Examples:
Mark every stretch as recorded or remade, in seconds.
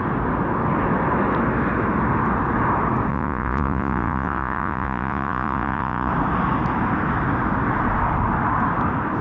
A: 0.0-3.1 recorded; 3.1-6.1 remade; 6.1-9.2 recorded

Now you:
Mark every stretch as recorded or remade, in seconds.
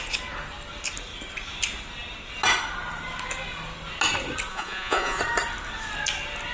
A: 0.0-4.5 recorded; 4.5-5.2 remade; 5.2-6.5 recorded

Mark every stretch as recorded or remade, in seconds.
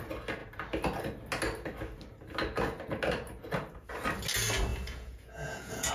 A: 0.0-4.7 recorded; 4.7-5.9 remade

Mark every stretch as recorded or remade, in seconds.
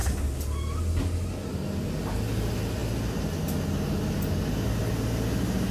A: 0.0-5.7 recorded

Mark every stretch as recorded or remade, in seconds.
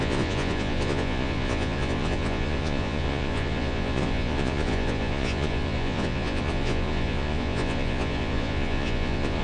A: 0.0-9.4 remade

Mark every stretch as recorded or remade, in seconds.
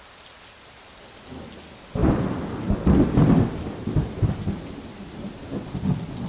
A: 0.0-6.3 recorded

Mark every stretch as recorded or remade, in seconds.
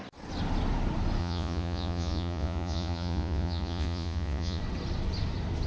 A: 0.0-1.2 recorded; 1.2-4.6 remade; 4.6-5.7 recorded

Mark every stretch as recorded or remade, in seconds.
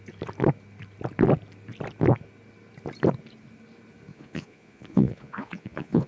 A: 0.0-4.1 recorded; 4.1-6.1 remade